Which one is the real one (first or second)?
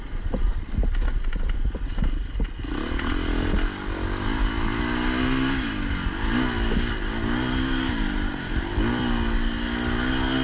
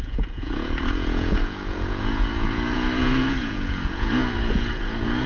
first